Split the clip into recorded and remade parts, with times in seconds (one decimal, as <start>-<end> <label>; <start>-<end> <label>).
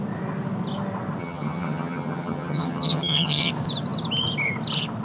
0.0-1.2 recorded; 1.2-3.5 remade; 3.5-5.0 recorded